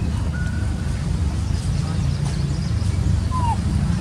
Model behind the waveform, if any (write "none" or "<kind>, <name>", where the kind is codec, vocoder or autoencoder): vocoder, BigVGAN v2